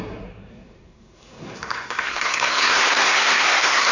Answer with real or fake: fake